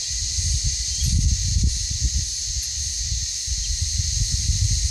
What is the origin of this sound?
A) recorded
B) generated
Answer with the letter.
A